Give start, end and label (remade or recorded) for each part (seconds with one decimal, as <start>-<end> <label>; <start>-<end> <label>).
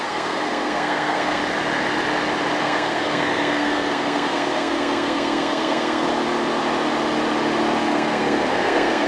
0.0-1.4 remade; 1.4-2.6 recorded; 2.6-6.1 remade; 6.1-7.8 recorded; 7.8-9.1 remade